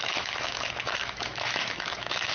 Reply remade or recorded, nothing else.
remade